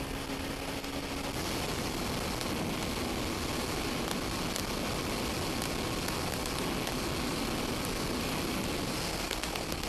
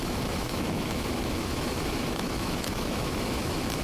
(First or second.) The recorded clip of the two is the first